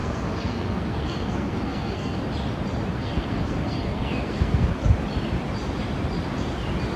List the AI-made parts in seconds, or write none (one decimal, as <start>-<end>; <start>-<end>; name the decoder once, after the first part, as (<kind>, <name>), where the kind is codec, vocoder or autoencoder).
0.0-2.2 (codec, SNAC); 2.9-4.9

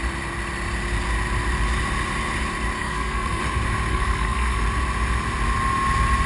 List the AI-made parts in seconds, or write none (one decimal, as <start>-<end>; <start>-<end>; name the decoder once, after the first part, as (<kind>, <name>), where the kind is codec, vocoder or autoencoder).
2.8-3.4 (codec, SNAC); 3.9-4.6

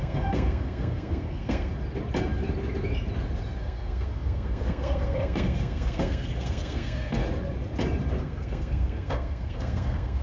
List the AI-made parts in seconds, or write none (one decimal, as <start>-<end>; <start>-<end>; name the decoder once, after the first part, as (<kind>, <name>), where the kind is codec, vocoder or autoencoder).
0.0-1.7 (codec, SNAC); 3.6-7.2; 8.2-10.2

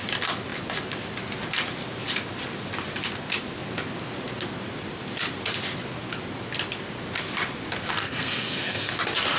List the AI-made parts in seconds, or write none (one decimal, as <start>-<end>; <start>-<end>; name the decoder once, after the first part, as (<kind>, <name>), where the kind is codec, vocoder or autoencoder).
8.0-8.9 (codec, SNAC)

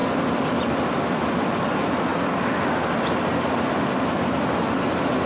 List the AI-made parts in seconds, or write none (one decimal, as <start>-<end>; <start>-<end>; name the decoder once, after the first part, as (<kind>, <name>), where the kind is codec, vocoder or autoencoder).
none

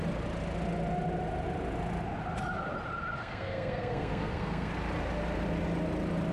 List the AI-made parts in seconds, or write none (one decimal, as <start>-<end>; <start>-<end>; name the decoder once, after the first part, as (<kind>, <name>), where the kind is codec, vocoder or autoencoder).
3.2-4.7 (codec, SNAC)

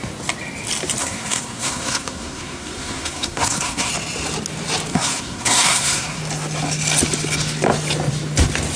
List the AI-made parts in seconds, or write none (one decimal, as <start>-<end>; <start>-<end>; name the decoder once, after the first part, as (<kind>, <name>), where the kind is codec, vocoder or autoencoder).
1.0-3.9 (codec, SNAC); 4.9-6.2

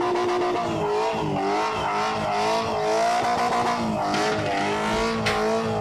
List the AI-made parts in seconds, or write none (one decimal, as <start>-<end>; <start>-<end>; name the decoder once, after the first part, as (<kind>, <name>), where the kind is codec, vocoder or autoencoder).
none